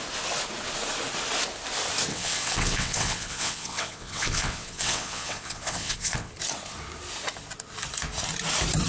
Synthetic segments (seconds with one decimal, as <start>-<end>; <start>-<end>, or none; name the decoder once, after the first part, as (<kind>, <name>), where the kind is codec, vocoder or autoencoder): 2.1-6.3 (vocoder, WaveNeXt)